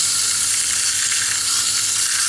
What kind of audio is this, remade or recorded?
recorded